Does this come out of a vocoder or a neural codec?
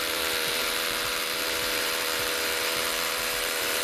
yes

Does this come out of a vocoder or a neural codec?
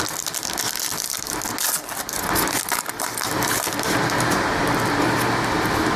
no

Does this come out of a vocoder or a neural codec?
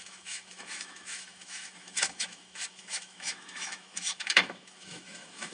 yes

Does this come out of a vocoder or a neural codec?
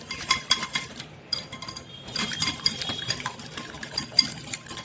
yes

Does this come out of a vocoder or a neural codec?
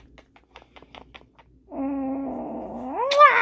no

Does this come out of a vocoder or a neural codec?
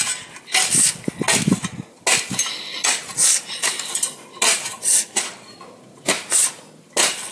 no